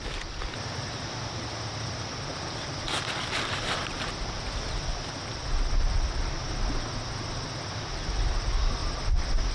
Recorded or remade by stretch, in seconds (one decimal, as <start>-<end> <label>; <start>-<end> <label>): 0.0-4.9 remade; 4.9-6.4 recorded; 6.4-8.8 remade; 8.8-9.5 recorded